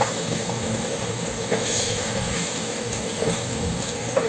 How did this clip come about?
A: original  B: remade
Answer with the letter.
B